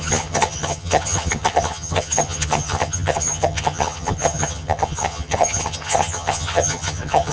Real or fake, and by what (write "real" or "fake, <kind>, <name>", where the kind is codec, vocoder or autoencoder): fake, vocoder, HiFi-GAN